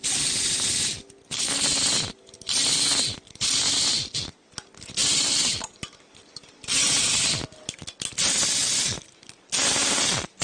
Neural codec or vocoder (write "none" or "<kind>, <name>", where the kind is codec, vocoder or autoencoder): none